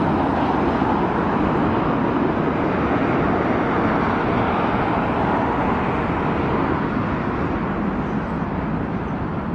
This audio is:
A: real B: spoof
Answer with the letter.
A